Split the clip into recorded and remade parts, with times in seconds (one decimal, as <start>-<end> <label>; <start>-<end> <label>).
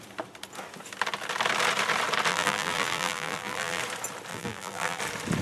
0.0-2.3 recorded; 2.3-3.8 remade; 3.8-4.3 recorded; 4.3-5.0 remade; 5.0-5.4 recorded